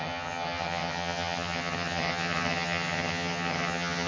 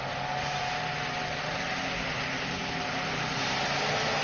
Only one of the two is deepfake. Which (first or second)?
first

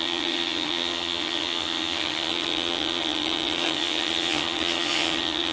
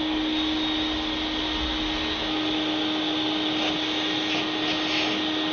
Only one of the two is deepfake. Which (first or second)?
first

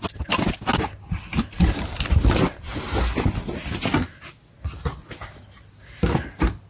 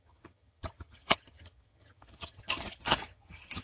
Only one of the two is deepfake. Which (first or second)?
second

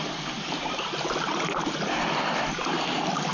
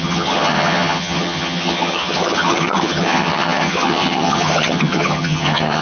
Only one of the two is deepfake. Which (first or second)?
second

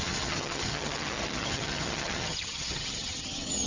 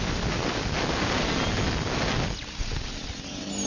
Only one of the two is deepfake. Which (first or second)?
first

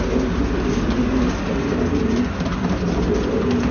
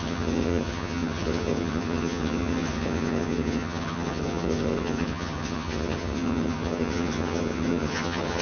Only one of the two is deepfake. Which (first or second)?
second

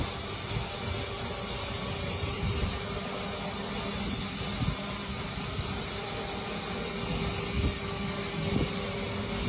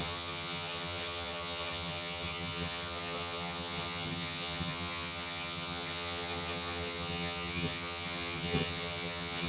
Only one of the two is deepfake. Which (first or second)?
second